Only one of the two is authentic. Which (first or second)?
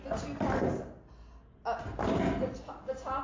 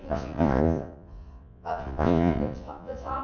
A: first